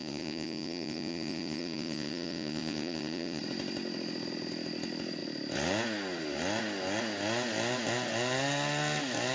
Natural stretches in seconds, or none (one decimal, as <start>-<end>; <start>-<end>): 3.4-9.3